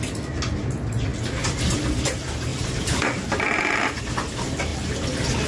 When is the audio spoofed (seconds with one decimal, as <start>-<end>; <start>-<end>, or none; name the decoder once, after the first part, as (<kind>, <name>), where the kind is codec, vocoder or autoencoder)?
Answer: none